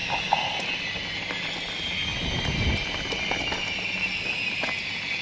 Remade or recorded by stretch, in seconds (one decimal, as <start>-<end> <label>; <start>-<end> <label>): 0.0-5.2 recorded